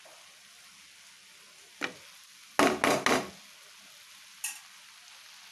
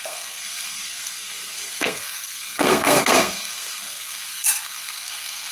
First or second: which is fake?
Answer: second